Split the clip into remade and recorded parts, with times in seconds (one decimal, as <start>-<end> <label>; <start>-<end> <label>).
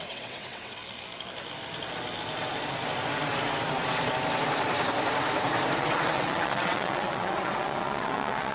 0.0-0.8 remade; 0.8-5.8 recorded; 5.8-8.5 remade